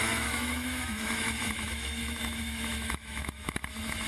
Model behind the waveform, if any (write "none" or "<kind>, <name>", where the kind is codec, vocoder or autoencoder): autoencoder, DAC-VAE